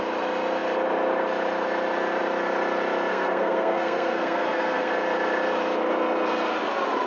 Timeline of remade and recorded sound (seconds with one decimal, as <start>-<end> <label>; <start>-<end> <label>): 0.0-3.1 recorded; 3.1-4.9 remade; 4.9-7.1 recorded